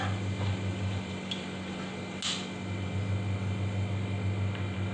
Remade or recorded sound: recorded